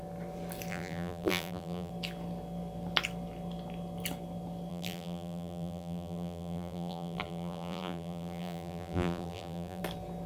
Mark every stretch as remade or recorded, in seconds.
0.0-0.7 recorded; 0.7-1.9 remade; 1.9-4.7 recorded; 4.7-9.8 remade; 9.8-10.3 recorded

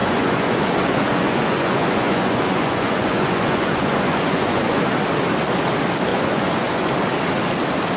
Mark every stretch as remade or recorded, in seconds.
0.0-4.8 remade; 4.8-6.1 recorded; 6.1-6.9 remade; 6.9-8.0 recorded

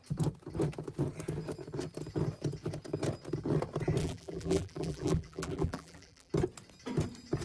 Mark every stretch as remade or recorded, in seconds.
0.0-4.0 recorded; 4.0-6.3 remade; 6.3-7.4 recorded

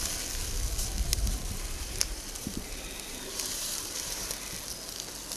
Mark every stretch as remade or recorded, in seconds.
0.0-1.1 recorded; 1.1-4.3 remade; 4.3-5.4 recorded